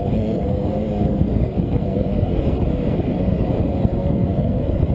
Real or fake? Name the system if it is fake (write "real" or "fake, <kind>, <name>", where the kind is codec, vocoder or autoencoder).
fake, codec, SNAC